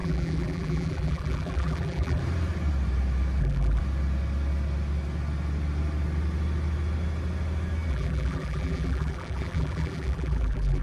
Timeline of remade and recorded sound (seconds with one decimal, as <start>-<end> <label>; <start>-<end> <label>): 0.0-2.2 remade; 2.2-3.4 recorded; 3.4-3.8 remade; 3.8-7.9 recorded; 7.9-10.8 remade